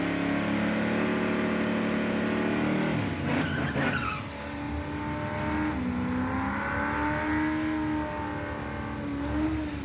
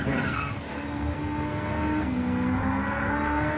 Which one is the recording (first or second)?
first